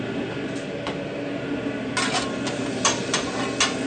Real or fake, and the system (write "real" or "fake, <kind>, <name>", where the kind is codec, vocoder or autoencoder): real